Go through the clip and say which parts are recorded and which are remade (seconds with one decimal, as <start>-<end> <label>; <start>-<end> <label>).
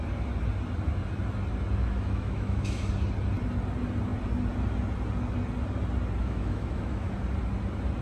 0.0-1.8 recorded; 1.8-2.9 remade; 2.9-6.2 recorded; 6.2-7.1 remade; 7.1-8.0 recorded